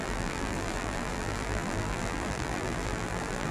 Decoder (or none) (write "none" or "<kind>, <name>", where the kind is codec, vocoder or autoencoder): vocoder, BigVGAN v2